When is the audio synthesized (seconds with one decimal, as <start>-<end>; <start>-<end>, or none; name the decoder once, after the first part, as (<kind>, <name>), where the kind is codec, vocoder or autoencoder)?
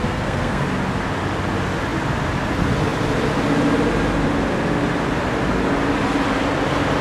0.0-0.6 (codec, SNAC)